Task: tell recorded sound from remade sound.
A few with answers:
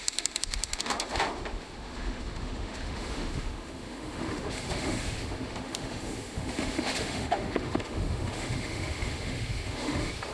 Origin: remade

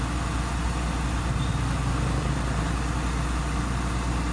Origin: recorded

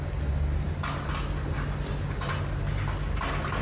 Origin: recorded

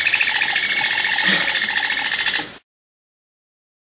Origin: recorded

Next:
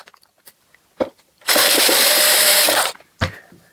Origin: remade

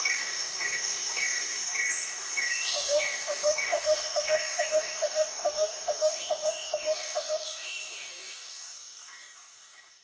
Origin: remade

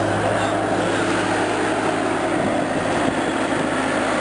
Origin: recorded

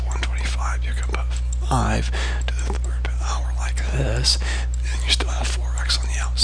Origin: recorded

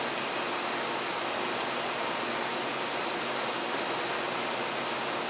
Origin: recorded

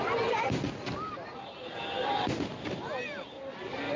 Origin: recorded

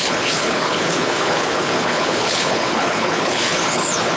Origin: remade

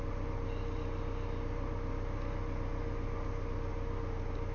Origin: recorded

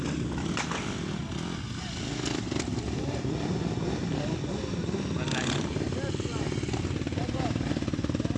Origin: recorded